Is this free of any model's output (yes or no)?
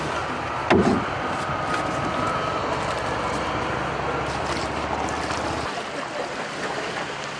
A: yes